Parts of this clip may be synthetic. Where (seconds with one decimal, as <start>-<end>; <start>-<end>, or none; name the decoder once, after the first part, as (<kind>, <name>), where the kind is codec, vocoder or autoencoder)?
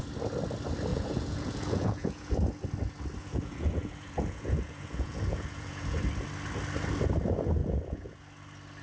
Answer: 0.9-2.3 (vocoder, Vocos); 3.2-6.0; 7.6-8.2